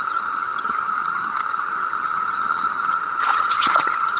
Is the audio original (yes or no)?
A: no